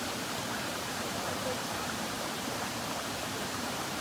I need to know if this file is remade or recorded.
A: remade